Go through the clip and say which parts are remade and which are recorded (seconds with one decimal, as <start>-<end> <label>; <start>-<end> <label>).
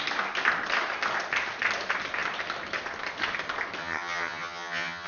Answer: 0.0-3.8 recorded; 3.8-5.1 remade